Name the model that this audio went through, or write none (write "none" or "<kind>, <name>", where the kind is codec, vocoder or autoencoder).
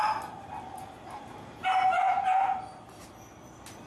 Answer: none